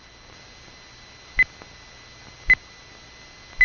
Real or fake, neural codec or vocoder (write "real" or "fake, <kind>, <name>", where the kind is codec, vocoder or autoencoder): real